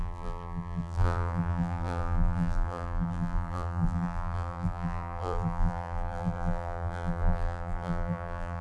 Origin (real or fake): fake